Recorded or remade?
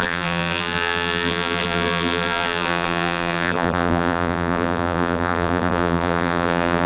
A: remade